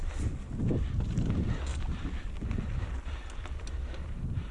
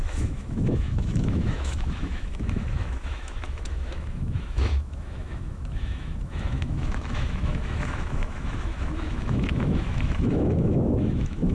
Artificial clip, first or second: second